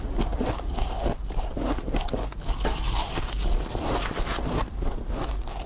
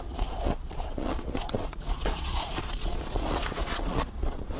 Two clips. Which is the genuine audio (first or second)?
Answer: first